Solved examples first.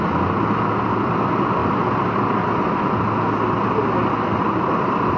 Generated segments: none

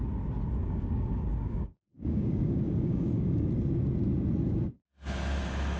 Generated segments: 0.6-3.5 (codec, DAC)

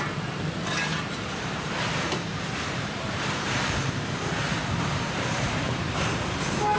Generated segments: 0.0-6.8 (vocoder, BigVGAN v2)

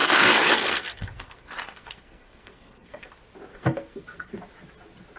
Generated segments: 0.0-3.1 (codec, SNAC); 3.5-4.3

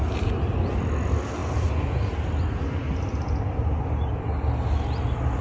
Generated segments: none

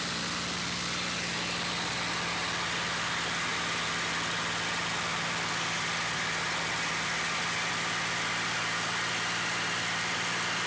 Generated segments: none

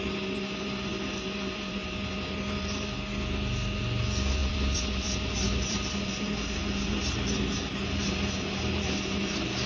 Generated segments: 4.4-5.8 (vocoder, BigVGAN v2)